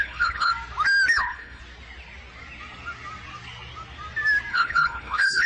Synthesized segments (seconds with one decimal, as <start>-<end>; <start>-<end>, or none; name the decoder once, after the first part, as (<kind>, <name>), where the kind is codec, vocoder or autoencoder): 0.0-0.5 (codec, HILCodec); 1.1-1.6; 4.5-5.5